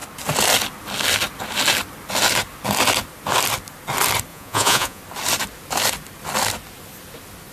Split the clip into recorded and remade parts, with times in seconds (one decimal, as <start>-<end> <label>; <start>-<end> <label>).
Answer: 0.0-4.3 recorded; 4.3-5.0 remade; 5.0-7.5 recorded